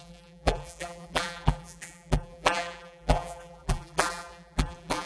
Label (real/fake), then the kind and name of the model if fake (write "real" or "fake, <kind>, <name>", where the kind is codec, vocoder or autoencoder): fake, vocoder, BigVGAN v2